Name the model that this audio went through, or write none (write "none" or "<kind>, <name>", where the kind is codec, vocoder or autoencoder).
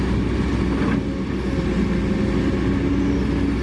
none